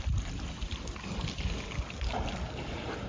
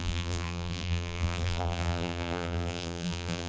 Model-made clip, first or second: second